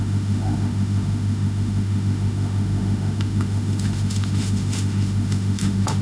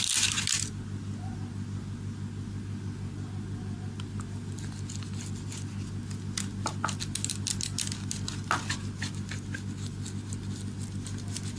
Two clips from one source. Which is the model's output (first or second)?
first